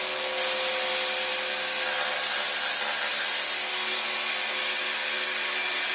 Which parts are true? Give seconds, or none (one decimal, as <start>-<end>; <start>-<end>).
0.0-5.9